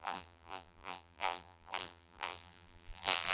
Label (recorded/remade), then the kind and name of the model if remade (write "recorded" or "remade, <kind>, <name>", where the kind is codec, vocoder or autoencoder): remade, vocoder, BigVGAN v2